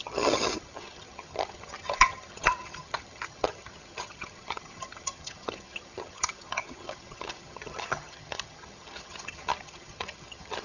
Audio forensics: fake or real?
fake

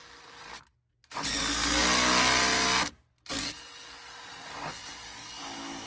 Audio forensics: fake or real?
real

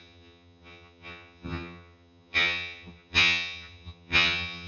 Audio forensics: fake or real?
fake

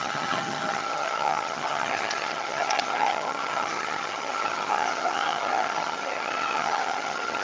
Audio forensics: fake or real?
fake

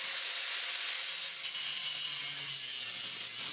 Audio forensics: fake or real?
real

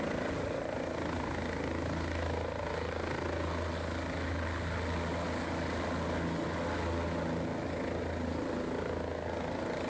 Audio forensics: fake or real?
real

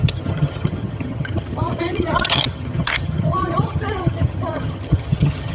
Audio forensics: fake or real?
fake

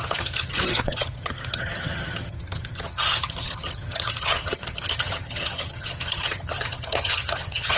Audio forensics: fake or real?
fake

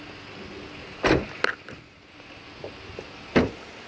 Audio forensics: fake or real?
real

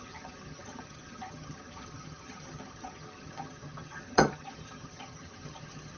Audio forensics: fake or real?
fake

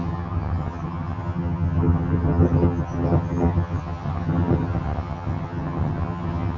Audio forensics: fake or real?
fake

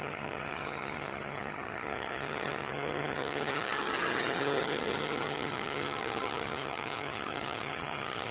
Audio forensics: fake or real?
fake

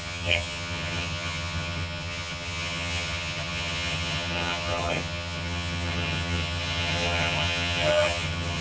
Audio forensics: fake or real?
fake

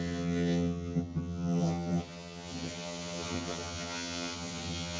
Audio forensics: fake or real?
fake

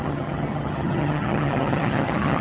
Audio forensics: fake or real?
fake